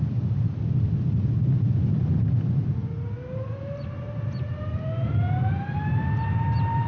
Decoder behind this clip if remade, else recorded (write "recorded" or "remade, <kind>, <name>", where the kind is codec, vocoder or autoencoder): recorded